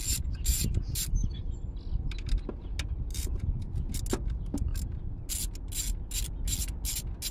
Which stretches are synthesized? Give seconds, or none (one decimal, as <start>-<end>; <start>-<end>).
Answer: 3.1-3.9